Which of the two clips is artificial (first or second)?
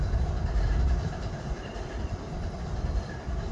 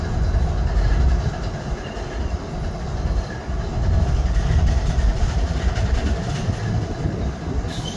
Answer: first